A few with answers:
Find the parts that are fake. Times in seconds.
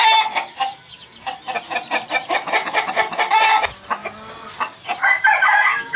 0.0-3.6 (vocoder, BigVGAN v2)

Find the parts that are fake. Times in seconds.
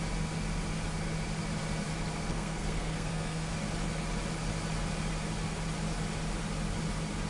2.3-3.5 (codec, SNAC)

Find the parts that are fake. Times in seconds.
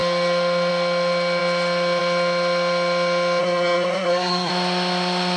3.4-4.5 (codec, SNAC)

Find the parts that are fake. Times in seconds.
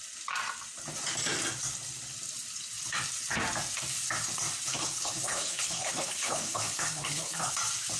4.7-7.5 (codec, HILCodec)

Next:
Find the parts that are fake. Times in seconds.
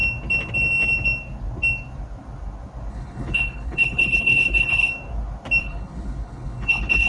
2.9-4.9 (codec, HILCodec); 5.6-7.1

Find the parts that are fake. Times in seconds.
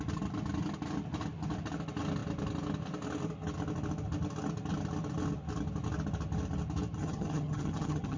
7.0-8.2 (vocoder, HiFi-GAN)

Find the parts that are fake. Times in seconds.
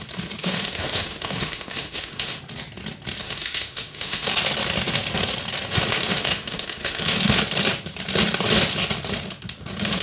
0.4-2.4 (autoencoder, DAC-VAE); 3.2-4.3; 5.9-7.3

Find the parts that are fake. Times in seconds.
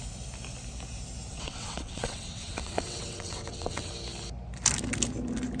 1.3-3.9 (vocoder, WaveNeXt)